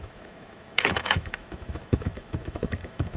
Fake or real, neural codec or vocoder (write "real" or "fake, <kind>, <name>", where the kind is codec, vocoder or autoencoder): fake, autoencoder, DAC-VAE